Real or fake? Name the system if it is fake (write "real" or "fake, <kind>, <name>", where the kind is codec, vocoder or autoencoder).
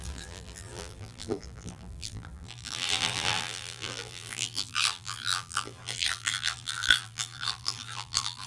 fake, vocoder, BigVGAN v2